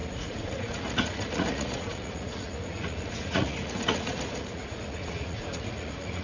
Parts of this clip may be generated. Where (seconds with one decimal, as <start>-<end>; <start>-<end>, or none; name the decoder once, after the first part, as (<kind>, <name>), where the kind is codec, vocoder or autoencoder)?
0.0-6.2 (vocoder, Vocos)